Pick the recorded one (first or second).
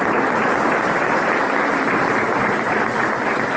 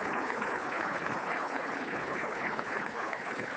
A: first